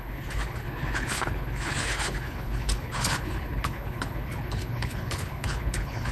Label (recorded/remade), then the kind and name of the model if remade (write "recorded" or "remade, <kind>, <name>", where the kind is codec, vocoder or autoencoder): remade, codec, HILCodec